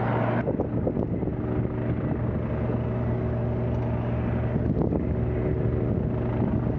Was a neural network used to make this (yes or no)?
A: no